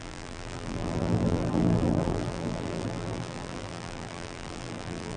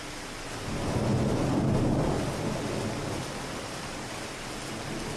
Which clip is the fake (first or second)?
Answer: first